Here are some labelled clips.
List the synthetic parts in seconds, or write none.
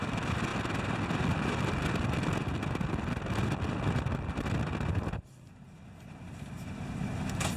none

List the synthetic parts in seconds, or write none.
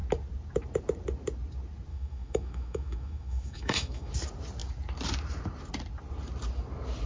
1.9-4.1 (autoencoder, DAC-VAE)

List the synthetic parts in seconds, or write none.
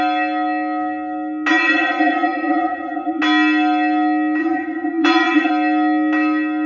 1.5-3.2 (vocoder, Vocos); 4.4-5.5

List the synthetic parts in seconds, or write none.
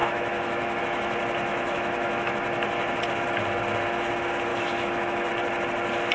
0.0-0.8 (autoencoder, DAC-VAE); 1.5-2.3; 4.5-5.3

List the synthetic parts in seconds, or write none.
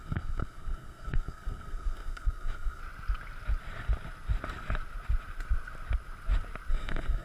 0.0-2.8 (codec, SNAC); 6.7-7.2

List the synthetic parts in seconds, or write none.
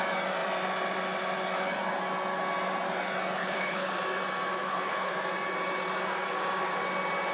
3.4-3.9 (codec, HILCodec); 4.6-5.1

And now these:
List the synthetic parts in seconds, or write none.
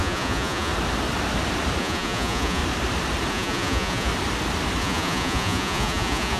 0.0-0.7 (vocoder, Vocos); 1.8-2.6; 3.3-4.1; 4.8-6.4